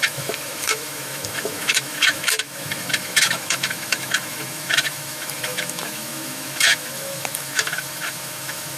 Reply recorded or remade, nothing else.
remade